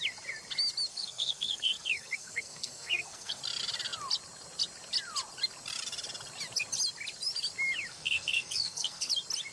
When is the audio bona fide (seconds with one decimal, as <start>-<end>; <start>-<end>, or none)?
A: 0.0-0.9; 3.4-7.9; 9.1-9.5